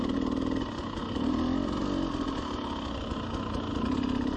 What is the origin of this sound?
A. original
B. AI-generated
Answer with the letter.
A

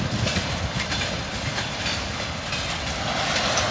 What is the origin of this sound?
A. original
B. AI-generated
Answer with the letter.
A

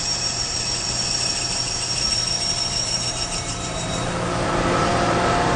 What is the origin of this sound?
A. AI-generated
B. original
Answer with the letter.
A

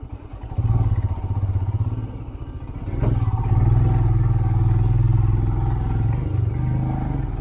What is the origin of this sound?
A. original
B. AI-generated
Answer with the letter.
A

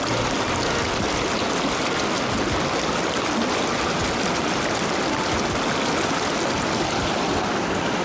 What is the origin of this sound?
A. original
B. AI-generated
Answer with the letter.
A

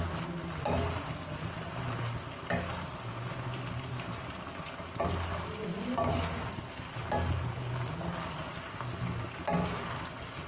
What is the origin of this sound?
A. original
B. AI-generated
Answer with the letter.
A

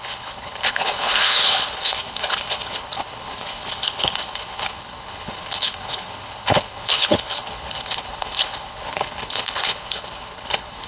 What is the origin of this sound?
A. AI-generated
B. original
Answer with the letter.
A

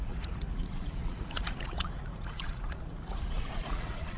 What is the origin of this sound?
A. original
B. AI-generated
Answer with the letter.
B